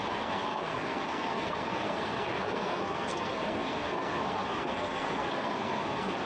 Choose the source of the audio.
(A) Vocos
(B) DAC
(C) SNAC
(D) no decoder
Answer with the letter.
C